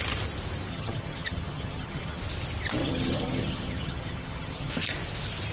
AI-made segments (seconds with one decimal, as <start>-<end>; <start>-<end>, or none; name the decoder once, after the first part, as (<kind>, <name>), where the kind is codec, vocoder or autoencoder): 0.7-2.2 (vocoder, HiFi-GAN); 2.8-4.7